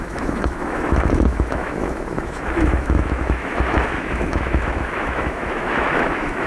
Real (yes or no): no